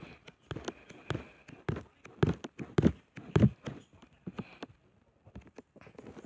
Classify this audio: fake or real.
real